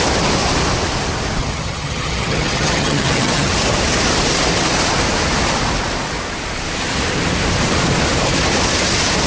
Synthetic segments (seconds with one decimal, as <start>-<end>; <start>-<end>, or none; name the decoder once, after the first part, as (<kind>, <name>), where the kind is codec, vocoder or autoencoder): 1.4-3.5 (vocoder, HiFi-GAN)